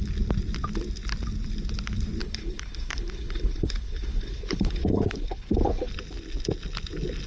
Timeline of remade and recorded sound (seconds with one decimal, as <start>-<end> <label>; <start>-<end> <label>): 0.0-2.2 recorded; 2.2-5.9 remade; 5.9-7.3 recorded